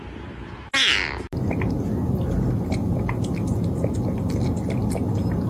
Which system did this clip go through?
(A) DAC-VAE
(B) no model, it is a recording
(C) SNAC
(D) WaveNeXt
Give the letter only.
B